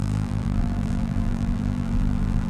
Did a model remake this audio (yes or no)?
yes